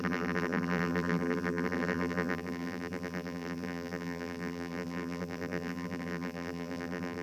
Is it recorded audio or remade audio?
remade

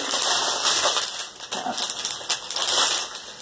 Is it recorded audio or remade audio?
recorded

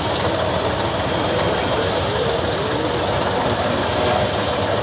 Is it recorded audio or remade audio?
recorded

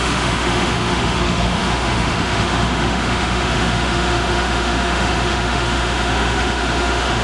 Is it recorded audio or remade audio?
remade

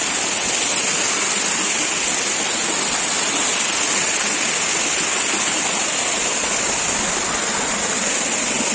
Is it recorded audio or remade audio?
recorded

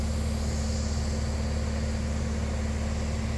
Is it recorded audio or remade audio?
recorded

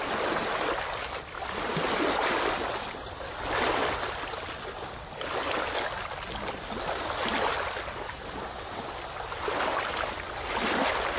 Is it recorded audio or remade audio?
recorded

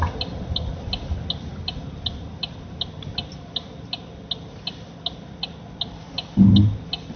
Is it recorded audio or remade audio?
recorded